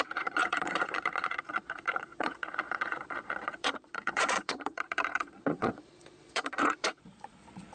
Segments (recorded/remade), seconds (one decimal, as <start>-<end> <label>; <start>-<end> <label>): 0.0-7.7 remade

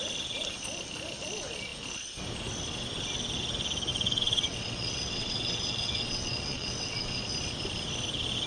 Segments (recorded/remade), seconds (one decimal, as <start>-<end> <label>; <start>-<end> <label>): 0.0-3.9 recorded; 3.9-7.2 remade; 7.2-8.5 recorded

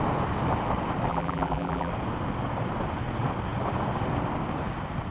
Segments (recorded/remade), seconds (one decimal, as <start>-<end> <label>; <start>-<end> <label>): 0.0-1.1 recorded; 1.1-1.9 remade; 1.9-5.1 recorded

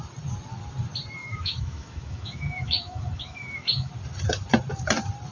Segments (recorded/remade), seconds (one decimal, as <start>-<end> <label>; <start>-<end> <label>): 0.0-1.2 recorded; 1.2-3.9 remade; 3.9-5.3 recorded

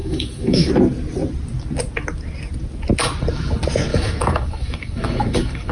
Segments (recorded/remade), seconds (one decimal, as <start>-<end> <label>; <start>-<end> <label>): 0.0-0.7 remade; 0.7-3.9 recorded; 3.9-5.7 remade